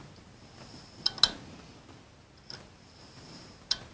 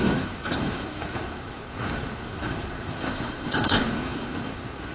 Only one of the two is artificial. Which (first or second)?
second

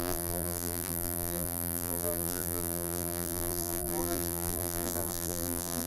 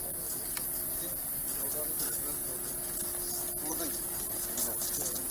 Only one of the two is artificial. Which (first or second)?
first